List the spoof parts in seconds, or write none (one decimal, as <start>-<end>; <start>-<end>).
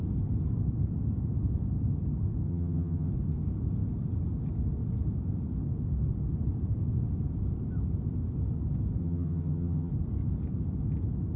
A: 2.5-3.1; 9.0-9.9